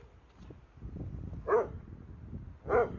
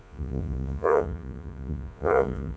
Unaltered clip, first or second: first